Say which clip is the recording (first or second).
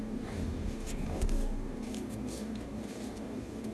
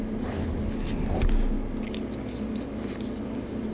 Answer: second